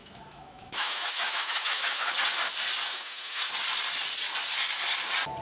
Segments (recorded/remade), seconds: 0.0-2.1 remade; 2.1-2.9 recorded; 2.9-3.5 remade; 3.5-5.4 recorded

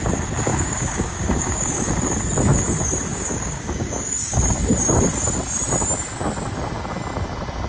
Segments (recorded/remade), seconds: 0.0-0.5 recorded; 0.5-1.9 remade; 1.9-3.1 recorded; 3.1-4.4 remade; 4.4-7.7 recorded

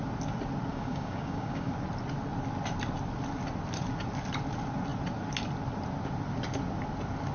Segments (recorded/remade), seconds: 0.0-0.7 recorded; 0.7-1.7 remade; 1.7-7.3 recorded

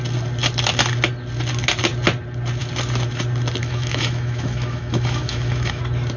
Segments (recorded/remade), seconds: 0.0-3.6 recorded; 3.6-5.8 remade; 5.8-6.2 recorded